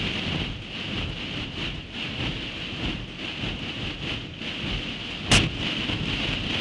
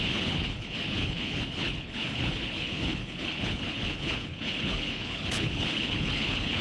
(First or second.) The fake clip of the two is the second